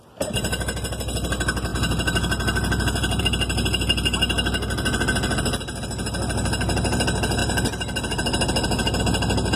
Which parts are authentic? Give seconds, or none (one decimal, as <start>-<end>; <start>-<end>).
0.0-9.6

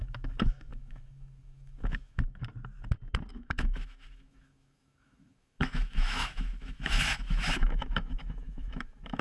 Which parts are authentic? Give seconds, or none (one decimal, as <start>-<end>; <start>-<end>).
2.4-3.3

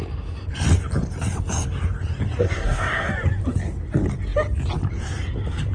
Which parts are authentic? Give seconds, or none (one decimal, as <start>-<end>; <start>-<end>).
0.0-2.4; 3.1-5.7